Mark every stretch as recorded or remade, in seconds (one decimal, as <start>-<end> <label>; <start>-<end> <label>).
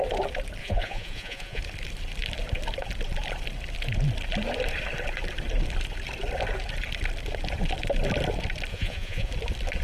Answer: 0.0-0.6 recorded; 0.6-1.6 remade; 1.6-8.7 recorded; 8.7-9.3 remade; 9.3-9.8 recorded